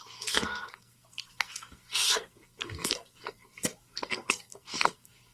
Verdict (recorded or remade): remade